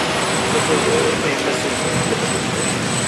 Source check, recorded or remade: recorded